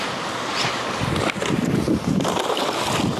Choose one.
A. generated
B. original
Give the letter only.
B